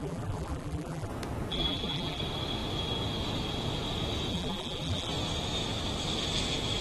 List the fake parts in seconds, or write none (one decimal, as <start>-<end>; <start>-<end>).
0.0-1.1; 1.5-2.2; 4.3-5.1